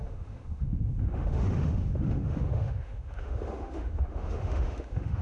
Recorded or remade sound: remade